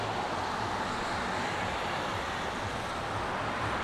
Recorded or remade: recorded